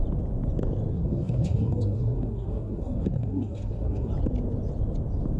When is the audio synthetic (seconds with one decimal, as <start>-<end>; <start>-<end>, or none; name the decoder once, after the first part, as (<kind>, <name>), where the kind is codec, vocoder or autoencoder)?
0.9-4.1 (codec, SNAC)